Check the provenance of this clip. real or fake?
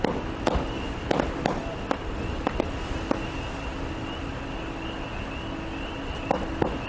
real